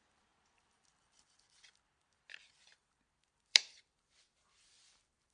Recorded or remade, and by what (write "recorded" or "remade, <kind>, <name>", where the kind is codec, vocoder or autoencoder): remade, vocoder, BigVGAN v2